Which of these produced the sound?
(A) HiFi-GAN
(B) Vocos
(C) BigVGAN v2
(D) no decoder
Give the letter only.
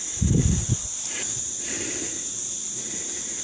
D